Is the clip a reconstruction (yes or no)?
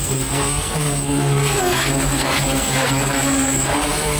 yes